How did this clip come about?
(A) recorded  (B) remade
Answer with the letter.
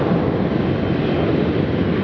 A